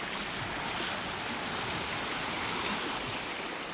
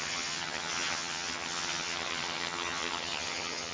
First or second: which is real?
first